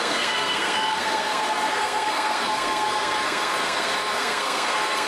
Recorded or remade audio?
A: remade